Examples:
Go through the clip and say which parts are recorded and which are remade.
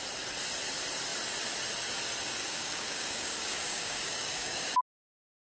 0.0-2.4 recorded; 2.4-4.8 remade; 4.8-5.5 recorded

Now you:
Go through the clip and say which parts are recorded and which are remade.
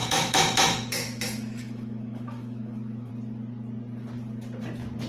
0.0-3.1 remade; 3.1-5.1 recorded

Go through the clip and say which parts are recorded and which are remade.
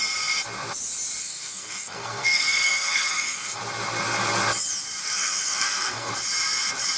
0.0-1.2 recorded; 1.2-3.6 remade; 3.6-5.0 recorded; 5.0-6.1 remade; 6.1-7.0 recorded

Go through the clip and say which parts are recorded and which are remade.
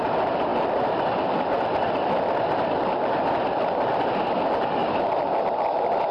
0.0-0.5 recorded; 0.5-3.9 remade; 3.9-6.1 recorded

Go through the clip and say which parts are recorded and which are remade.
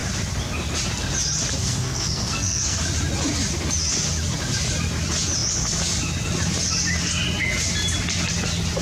0.0-1.6 recorded; 1.6-2.8 remade; 2.8-8.8 recorded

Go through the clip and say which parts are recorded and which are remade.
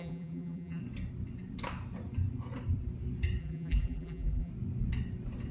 0.0-0.8 remade; 0.8-3.4 recorded; 3.4-4.5 remade; 4.5-5.5 recorded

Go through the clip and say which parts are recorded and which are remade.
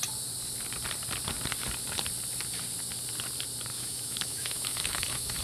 0.0-3.7 recorded; 3.7-5.4 remade